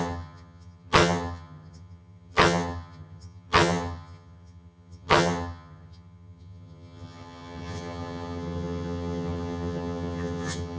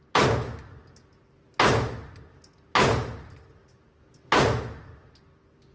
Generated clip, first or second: first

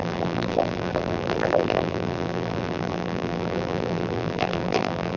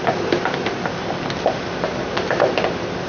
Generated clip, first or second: first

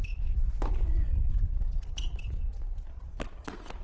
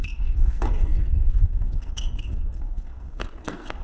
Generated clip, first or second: second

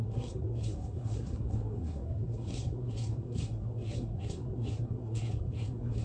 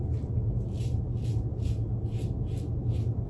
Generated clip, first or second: first